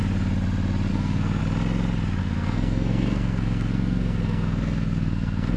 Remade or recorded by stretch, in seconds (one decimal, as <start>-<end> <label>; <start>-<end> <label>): 0.0-0.9 recorded; 0.9-1.4 remade; 1.4-2.2 recorded; 2.2-5.6 remade